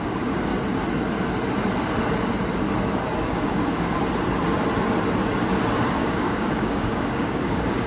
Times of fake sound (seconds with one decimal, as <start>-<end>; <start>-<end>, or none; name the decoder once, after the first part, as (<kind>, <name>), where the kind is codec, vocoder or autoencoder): 0.0-0.5 (codec, DAC); 3.2-3.9; 5.9-7.9